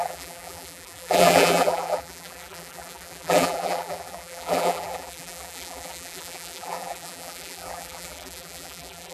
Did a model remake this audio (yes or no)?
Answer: yes